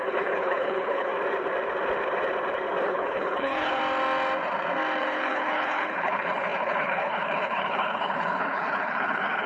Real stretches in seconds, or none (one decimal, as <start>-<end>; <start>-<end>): 1.1-2.8; 3.8-5.0